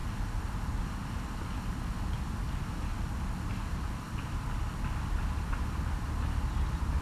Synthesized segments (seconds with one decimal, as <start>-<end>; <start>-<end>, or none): none